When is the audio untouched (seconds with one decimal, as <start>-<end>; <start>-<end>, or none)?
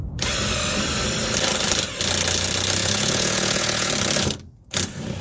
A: 0.0-2.8; 3.9-5.2